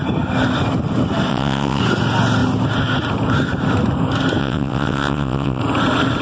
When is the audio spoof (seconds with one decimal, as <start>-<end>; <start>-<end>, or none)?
1.3-1.8; 4.4-5.6